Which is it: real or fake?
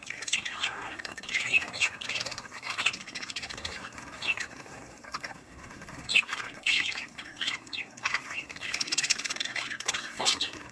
fake